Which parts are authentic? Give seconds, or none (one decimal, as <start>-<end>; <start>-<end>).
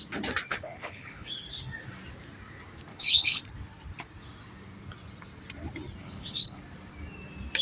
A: 0.0-0.5; 1.3-2.9; 3.4-6.0; 6.6-7.6